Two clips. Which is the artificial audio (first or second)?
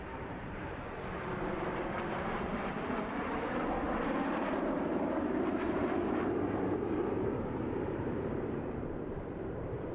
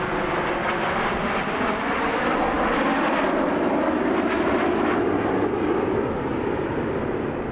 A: first